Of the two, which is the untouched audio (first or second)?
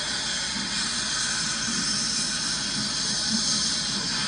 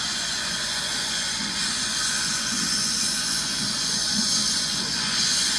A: first